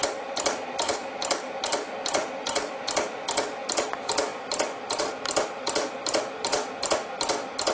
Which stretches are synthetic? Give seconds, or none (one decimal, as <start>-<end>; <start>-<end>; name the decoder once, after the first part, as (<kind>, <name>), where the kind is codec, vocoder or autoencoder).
none